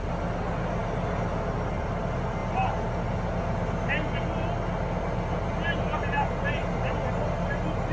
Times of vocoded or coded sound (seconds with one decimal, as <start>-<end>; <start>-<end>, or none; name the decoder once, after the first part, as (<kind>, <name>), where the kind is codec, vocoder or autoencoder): none